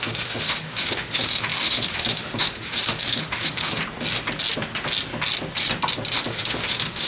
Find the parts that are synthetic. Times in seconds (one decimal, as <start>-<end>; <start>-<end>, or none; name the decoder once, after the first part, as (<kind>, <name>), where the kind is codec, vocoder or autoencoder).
0.0-3.8 (autoencoder, DAC-VAE); 6.1-7.1

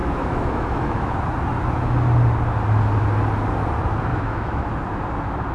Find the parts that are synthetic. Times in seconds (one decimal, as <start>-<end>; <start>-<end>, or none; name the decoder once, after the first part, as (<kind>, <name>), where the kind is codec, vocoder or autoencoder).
0.0-1.1 (autoencoder, DAC-VAE); 4.1-4.7

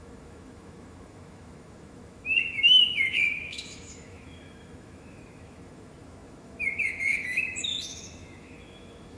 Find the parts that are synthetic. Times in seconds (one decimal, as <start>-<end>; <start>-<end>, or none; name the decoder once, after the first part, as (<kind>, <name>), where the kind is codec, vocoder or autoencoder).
0.0-9.2 (autoencoder, DAC-VAE)